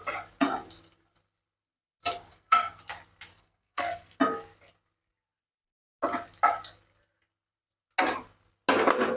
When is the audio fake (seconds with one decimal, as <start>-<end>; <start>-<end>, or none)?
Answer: 2.3-2.8; 3.3-4.2